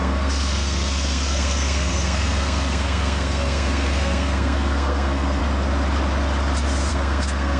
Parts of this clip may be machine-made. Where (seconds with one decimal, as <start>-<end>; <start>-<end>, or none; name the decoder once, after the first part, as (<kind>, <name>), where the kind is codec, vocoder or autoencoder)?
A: 0.0-5.4 (codec, SNAC); 6.9-7.6